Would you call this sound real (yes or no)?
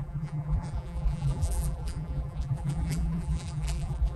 no